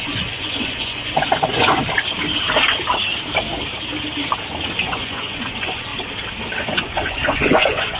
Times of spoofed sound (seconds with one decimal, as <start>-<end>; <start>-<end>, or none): 0.0-1.8; 4.8-5.9; 6.6-8.0